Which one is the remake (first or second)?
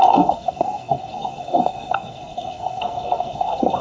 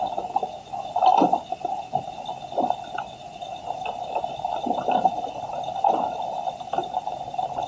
first